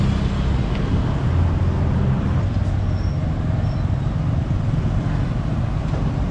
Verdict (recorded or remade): recorded